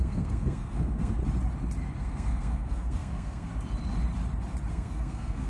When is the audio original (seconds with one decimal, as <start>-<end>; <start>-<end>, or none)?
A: 1.2-2.0; 3.5-4.7

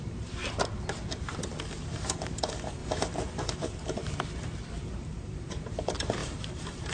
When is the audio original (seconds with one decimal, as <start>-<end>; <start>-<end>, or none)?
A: 0.4-1.7; 4.0-4.8

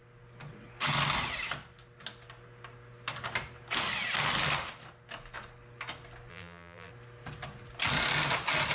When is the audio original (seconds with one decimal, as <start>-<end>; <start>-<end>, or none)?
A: 0.0-6.3; 6.9-8.7

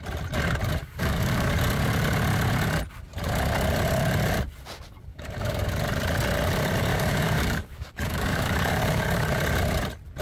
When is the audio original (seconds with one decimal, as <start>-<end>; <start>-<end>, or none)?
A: 0.0-0.8; 1.6-5.1; 5.7-6.9; 9.3-10.2